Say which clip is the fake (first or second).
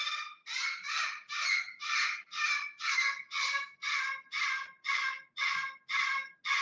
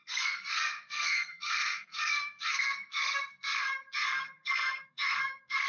second